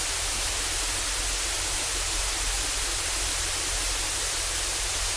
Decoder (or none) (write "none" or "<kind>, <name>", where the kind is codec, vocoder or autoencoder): vocoder, BigVGAN v2